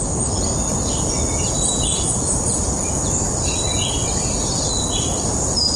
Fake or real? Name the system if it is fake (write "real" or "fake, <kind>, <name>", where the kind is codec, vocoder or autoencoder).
real